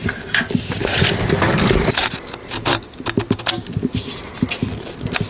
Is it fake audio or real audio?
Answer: real